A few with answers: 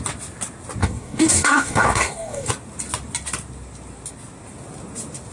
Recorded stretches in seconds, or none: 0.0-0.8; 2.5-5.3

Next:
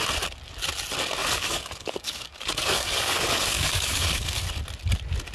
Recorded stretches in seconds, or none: 0.0-1.2; 4.4-5.3

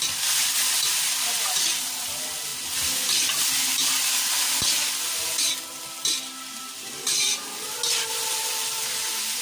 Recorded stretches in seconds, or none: 0.0-9.4

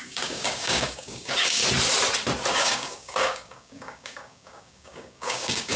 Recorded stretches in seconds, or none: 1.6-2.5

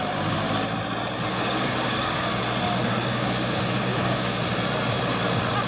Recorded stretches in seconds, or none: 0.0-1.3; 2.4-2.8; 4.4-5.7